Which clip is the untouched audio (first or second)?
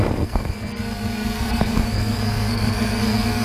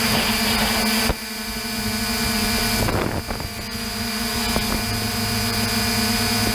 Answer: second